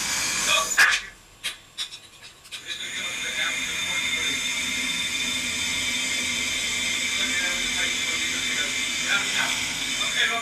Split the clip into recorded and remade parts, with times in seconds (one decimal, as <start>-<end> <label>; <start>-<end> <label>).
0.0-0.5 remade; 0.5-9.2 recorded; 9.2-9.9 remade; 9.9-10.4 recorded